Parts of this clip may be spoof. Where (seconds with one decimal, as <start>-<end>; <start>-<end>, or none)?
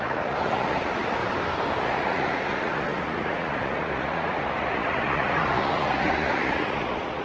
0.0-1.2; 1.8-7.2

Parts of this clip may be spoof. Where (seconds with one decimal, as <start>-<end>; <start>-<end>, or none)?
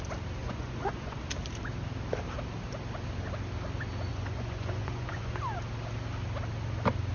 0.4-1.2; 4.1-5.3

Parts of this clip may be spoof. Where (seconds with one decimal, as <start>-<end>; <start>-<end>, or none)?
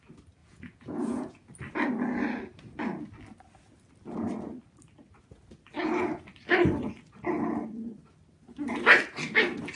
0.4-1.5